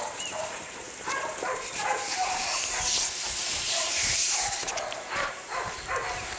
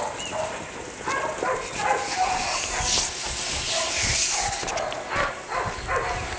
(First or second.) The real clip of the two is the second